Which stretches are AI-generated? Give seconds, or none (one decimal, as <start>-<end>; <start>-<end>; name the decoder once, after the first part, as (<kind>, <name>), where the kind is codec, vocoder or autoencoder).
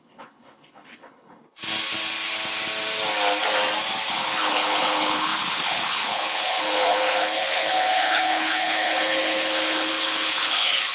0.0-1.4 (codec, HILCodec); 4.1-10.9